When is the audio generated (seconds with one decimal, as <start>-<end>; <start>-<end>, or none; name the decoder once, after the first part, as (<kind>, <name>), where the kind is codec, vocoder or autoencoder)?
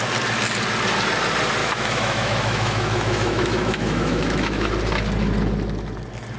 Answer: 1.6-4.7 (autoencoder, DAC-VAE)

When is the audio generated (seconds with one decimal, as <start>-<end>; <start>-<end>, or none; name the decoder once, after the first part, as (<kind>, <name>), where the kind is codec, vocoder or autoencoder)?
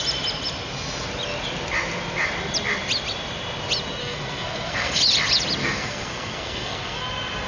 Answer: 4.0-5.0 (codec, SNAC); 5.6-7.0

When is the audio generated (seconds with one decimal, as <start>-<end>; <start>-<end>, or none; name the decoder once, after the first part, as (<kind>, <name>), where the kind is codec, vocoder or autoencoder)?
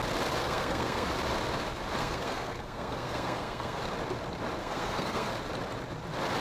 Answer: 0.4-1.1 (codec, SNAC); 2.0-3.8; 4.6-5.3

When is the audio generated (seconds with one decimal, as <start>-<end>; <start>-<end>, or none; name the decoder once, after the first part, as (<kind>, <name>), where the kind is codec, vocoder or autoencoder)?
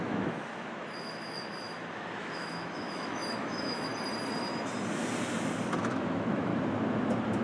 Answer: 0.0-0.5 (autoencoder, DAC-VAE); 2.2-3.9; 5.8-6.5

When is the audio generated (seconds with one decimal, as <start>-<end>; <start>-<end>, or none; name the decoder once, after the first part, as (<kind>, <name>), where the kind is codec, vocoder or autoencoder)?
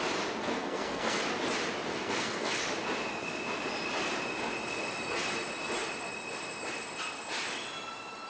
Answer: 0.4-1.2 (codec, SNAC); 1.9-2.6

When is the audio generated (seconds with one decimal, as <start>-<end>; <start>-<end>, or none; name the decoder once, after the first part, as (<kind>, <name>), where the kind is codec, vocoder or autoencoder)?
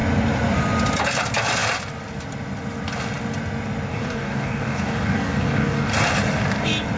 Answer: 3.9-5.9 (codec, DAC)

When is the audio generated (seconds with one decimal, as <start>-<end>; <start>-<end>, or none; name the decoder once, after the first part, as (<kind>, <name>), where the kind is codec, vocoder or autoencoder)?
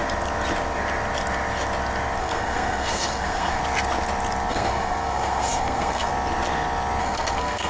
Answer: 2.2-3.6 (codec, SNAC); 4.5-6.1; 7.0-7.7